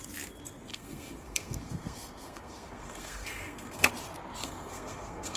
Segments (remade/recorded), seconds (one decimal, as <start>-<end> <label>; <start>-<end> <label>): 0.0-0.7 recorded; 0.7-3.9 remade; 3.9-4.4 recorded; 4.4-5.4 remade